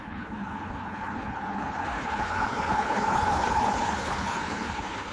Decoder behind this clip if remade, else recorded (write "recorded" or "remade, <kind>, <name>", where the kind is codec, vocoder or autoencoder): remade, codec, HILCodec